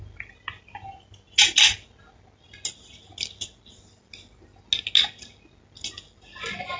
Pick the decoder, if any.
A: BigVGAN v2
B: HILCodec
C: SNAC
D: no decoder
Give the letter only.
D